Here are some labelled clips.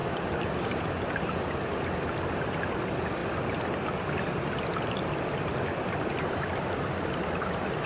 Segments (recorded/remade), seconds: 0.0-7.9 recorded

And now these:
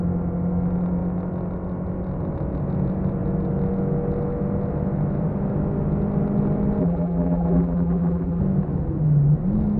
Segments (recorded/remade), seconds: 0.0-6.8 recorded; 6.8-8.4 remade; 8.4-9.8 recorded

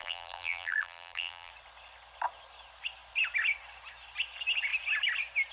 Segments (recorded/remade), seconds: 0.0-1.5 remade; 1.5-5.5 recorded

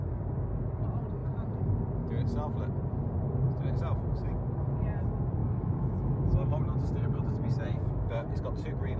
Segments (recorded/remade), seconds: 0.0-5.4 recorded; 5.4-6.2 remade; 6.2-7.7 recorded; 7.7-8.3 remade; 8.3-9.0 recorded

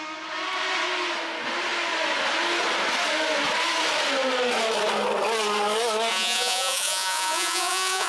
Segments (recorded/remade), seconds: 0.0-6.1 recorded; 6.1-8.1 remade

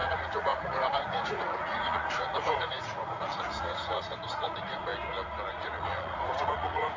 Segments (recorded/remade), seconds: 0.0-4.9 remade; 4.9-5.5 recorded; 5.5-7.0 remade